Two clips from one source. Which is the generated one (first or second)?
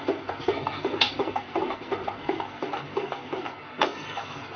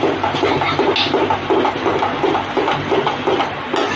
first